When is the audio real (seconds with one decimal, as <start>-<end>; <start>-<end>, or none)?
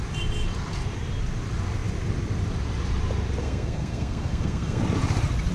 0.0-3.4; 4.8-5.5